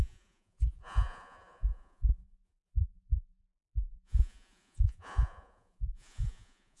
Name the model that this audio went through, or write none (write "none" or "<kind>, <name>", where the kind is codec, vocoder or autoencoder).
vocoder, Vocos